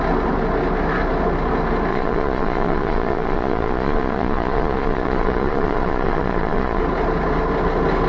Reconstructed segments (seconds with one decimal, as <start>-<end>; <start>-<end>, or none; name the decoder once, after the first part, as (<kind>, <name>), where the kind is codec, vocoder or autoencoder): 1.9-6.8 (vocoder, Vocos)